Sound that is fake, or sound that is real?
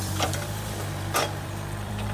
fake